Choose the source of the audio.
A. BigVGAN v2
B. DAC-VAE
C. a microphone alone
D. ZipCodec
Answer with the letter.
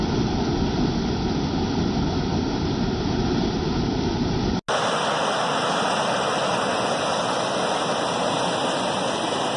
C